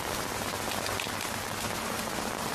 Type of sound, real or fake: real